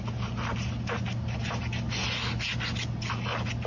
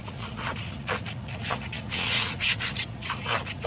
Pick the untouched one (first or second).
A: first